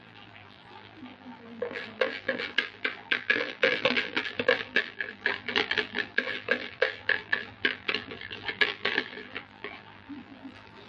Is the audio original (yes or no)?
no